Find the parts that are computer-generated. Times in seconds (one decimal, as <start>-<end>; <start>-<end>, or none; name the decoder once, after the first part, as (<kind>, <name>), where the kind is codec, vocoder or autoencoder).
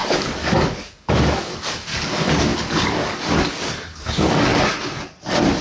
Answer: 0.0-4.5 (codec, DAC)